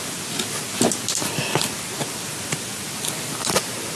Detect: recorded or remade recorded